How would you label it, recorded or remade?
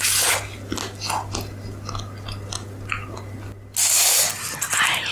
recorded